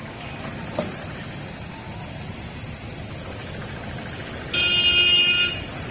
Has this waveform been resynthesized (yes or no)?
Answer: no